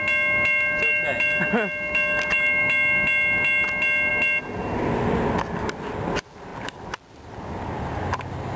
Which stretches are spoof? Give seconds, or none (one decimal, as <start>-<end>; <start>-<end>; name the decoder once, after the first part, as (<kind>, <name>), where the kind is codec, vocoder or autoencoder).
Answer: none